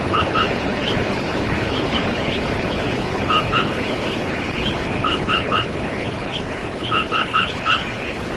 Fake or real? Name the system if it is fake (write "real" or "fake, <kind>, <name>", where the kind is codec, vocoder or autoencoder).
fake, codec, HILCodec